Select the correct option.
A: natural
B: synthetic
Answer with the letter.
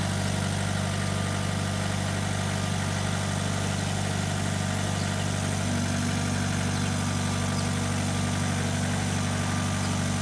A